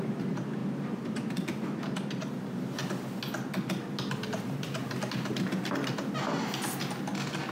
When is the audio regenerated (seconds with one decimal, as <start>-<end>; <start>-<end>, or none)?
none